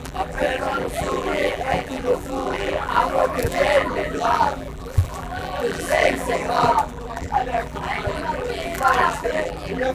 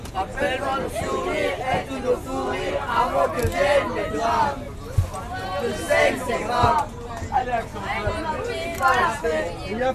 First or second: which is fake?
first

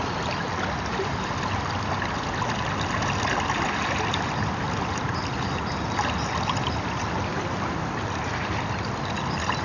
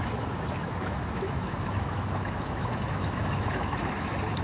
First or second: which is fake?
second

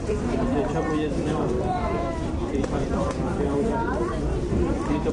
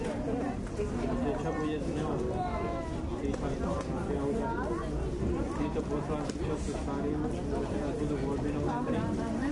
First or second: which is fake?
first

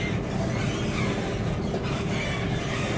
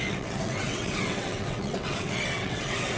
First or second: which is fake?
second